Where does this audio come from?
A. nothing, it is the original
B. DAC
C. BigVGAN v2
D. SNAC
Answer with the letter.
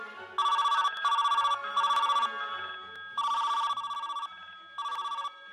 A